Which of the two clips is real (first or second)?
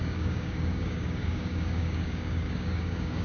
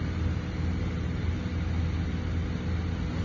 second